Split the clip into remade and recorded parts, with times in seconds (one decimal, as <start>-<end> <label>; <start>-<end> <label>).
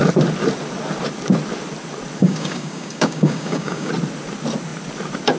0.0-2.2 recorded; 2.2-3.9 remade; 3.9-5.4 recorded